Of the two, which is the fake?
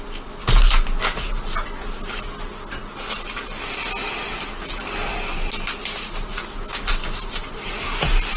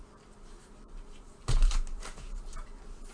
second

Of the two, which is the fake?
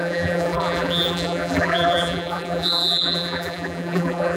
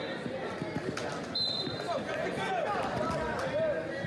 first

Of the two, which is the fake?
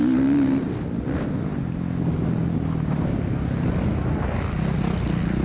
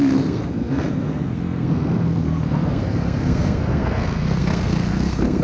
second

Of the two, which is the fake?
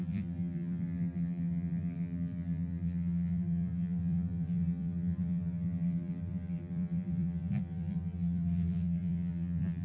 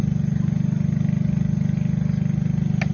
first